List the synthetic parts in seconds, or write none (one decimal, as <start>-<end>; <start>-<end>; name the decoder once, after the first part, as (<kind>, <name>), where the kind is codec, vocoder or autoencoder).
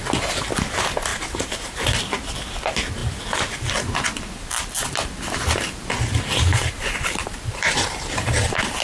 1.1-2.0 (vocoder, BigVGAN v2); 6.5-8.4